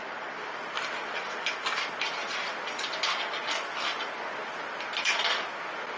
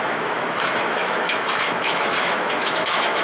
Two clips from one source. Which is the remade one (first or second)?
second